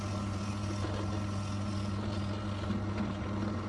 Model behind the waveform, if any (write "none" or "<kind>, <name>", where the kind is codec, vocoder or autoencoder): none